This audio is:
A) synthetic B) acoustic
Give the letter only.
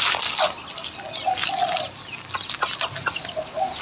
B